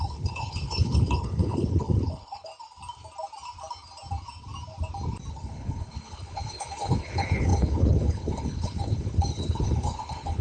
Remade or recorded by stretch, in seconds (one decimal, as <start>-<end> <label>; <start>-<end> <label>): 0.0-2.5 remade; 2.5-5.3 recorded; 5.3-10.4 remade